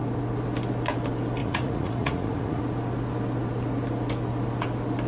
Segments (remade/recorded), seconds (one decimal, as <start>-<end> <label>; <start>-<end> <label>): 0.0-1.4 recorded; 1.4-2.6 remade; 2.6-5.1 recorded